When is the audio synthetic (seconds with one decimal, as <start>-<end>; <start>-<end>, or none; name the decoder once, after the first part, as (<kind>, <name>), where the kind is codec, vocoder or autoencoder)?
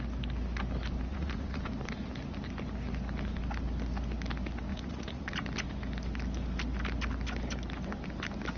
1.1-1.6 (vocoder, Vocos); 4.7-5.3